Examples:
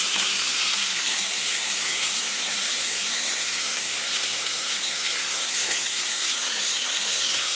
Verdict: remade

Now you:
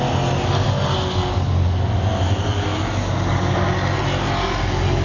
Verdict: recorded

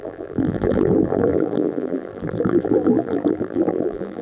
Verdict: remade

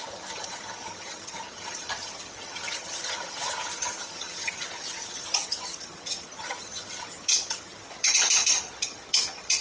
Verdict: remade